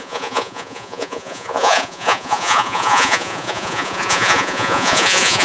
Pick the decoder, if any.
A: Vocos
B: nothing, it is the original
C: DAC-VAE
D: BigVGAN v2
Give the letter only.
A